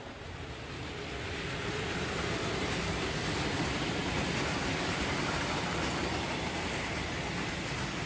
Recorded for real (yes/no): yes